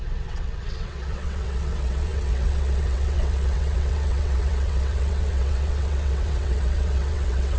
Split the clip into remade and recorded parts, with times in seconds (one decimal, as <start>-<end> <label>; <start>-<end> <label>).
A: 0.0-7.6 remade